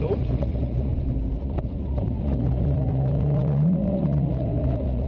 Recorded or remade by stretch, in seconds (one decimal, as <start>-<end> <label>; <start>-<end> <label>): 0.0-0.9 remade; 0.9-1.4 recorded; 1.4-5.1 remade